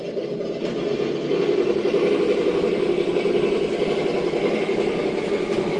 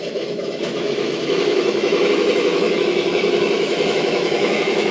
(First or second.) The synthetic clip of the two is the second